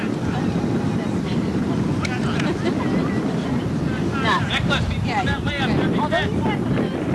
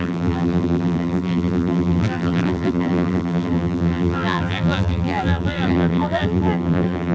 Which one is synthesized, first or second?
second